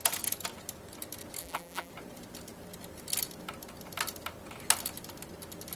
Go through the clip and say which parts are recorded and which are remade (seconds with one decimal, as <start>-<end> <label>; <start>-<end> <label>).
0.0-1.4 recorded; 1.4-1.9 remade; 1.9-5.8 recorded